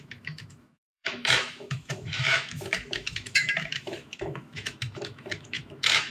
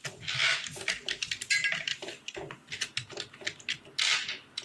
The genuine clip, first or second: second